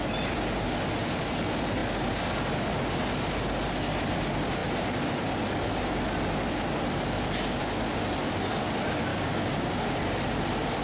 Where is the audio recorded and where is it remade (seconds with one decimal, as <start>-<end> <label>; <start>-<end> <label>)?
0.0-9.1 recorded; 9.1-9.7 remade; 9.7-10.8 recorded